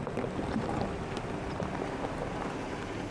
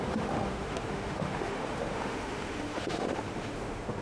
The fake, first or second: second